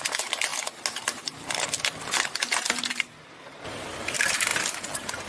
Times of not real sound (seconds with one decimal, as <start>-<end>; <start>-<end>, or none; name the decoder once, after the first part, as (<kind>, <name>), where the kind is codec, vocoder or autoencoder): 0.0-0.5 (vocoder, BigVGAN v2); 3.7-4.5